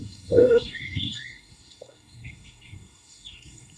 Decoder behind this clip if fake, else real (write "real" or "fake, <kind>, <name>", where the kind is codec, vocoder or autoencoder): fake, codec, SNAC